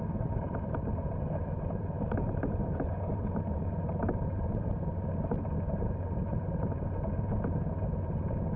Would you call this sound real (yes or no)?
no